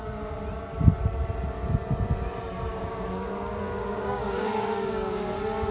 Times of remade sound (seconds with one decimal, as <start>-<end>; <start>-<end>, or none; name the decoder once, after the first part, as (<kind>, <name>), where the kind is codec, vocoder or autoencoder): 2.7-5.3 (codec, DAC)